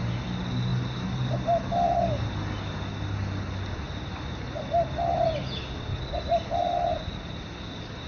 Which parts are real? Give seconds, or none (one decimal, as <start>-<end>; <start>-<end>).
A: 0.0-8.1